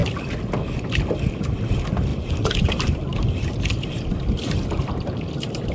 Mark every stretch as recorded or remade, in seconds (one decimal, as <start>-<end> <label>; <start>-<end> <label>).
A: 0.0-2.1 recorded; 2.1-5.7 remade